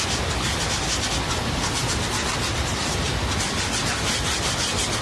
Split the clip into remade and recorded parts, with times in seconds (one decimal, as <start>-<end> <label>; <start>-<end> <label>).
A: 0.0-5.0 recorded